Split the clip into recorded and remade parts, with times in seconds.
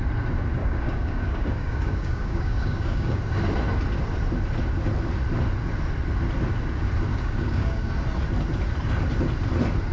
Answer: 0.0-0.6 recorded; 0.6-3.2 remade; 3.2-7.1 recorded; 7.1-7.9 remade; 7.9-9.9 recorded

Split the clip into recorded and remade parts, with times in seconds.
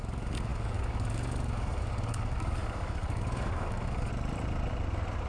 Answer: 0.0-4.1 remade; 4.1-5.3 recorded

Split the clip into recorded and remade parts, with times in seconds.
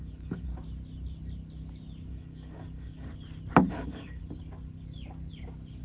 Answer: 0.0-0.5 remade; 0.5-2.1 recorded; 2.1-3.1 remade; 3.1-3.7 recorded; 3.7-4.2 remade; 4.2-5.8 recorded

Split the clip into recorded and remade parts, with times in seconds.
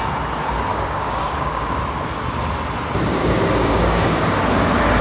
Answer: 0.0-0.7 recorded; 0.7-1.8 remade; 1.8-3.2 recorded; 3.2-4.4 remade; 4.4-5.0 recorded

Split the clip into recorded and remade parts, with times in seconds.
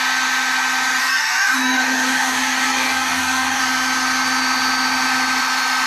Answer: 0.0-1.0 recorded; 1.0-3.6 remade; 3.6-5.9 recorded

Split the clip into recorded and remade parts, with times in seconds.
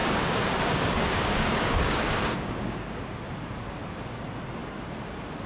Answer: 0.0-3.3 remade; 3.3-5.5 recorded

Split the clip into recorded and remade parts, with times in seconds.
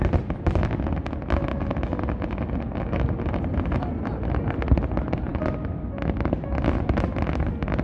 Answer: 0.0-7.8 recorded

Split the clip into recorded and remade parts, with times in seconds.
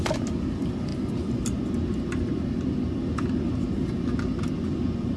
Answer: 0.0-5.2 recorded